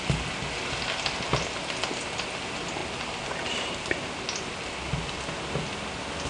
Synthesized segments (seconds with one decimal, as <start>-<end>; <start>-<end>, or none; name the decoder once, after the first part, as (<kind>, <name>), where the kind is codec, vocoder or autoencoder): none